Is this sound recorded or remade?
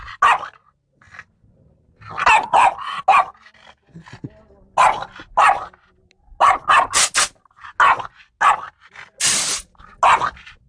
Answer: recorded